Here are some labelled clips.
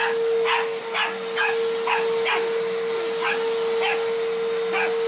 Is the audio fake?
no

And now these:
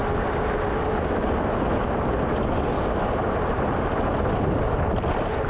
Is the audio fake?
no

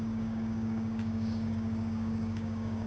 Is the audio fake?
yes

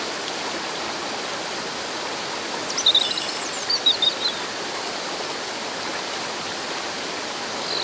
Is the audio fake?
no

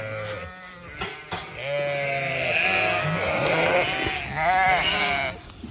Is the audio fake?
no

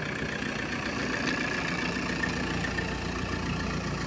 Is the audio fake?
no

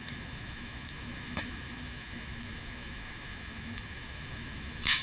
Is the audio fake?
yes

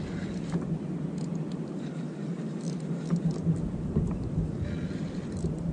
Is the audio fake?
no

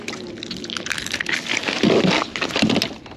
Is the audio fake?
no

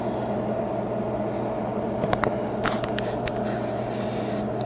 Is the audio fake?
no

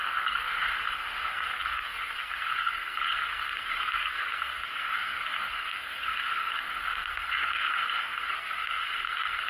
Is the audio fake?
yes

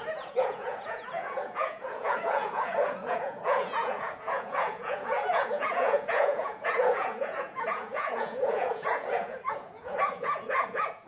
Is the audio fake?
yes